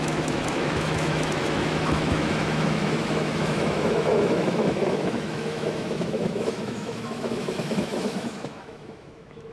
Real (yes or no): no